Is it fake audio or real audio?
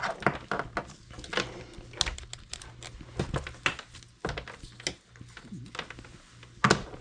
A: real